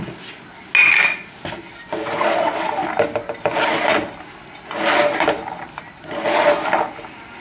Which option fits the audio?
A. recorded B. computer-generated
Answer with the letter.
A